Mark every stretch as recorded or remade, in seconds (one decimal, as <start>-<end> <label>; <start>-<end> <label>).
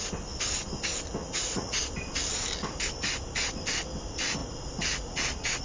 0.0-1.2 recorded; 1.2-1.8 remade; 1.8-4.4 recorded; 4.4-5.6 remade